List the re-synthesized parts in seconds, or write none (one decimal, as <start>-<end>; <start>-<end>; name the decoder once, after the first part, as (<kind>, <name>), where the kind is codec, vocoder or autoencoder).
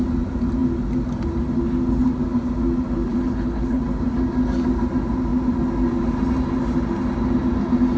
3.1-3.8 (codec, HILCodec)